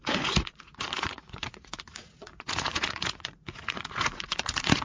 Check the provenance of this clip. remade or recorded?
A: remade